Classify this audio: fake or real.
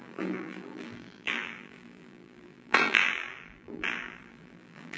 fake